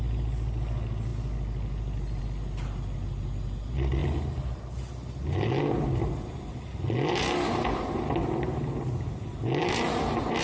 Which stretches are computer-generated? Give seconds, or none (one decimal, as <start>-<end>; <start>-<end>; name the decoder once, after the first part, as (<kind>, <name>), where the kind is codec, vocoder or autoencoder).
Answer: none